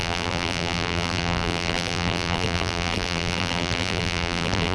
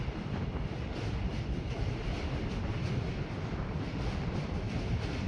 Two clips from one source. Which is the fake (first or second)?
first